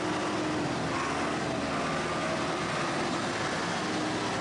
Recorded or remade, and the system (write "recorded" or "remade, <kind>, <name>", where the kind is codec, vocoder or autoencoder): recorded